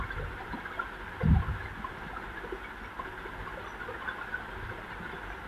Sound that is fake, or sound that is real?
real